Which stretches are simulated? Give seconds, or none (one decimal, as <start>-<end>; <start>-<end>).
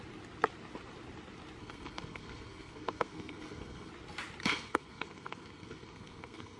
1.6-3.9; 4.4-6.6